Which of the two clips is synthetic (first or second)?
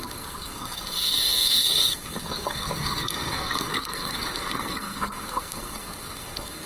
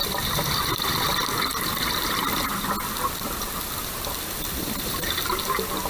first